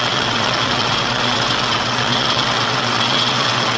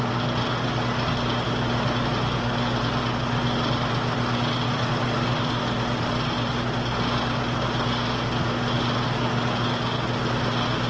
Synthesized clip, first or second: first